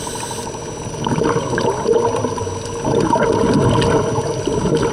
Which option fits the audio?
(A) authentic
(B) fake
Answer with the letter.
A